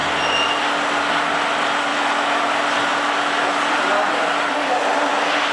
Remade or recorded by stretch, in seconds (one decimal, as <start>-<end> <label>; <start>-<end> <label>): 0.0-1.9 recorded; 1.9-2.4 remade; 2.4-5.5 recorded